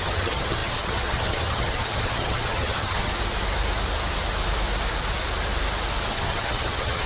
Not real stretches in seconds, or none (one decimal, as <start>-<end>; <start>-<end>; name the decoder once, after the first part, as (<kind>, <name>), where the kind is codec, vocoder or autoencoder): 0.0-3.1 (vocoder, HiFi-GAN); 6.1-7.1